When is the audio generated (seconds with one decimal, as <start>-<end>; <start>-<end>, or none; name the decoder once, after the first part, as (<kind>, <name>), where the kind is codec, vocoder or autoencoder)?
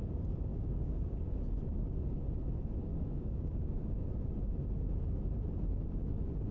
0.5-1.4 (codec, DAC); 2.9-3.8